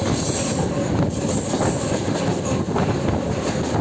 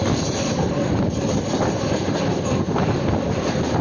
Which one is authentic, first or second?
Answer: first